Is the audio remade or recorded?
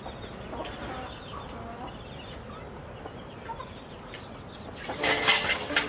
recorded